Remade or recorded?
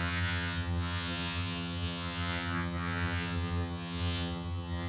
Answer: remade